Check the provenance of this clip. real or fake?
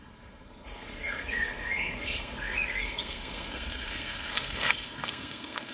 fake